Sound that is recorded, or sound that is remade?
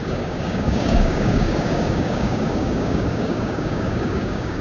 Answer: remade